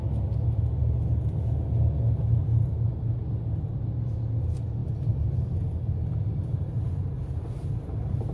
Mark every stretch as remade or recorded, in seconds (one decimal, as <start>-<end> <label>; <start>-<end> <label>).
0.0-8.3 recorded